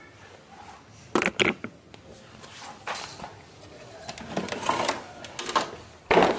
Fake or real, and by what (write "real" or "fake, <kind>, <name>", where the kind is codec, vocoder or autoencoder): real